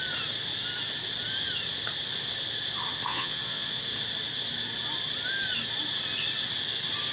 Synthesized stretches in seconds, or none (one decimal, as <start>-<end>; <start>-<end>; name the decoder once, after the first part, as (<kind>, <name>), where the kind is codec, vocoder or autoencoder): 3.1-3.8 (vocoder, Vocos)